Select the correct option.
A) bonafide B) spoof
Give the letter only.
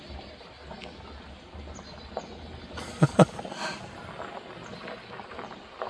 A